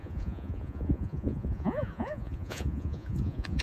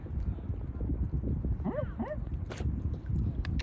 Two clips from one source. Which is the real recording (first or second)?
second